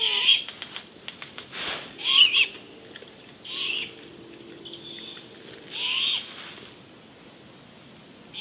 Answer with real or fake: real